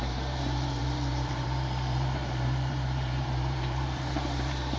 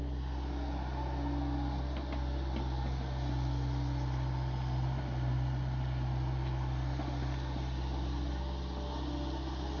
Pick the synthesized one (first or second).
first